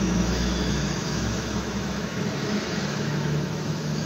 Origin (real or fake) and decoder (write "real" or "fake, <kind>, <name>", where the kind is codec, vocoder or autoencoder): fake, autoencoder, DAC-VAE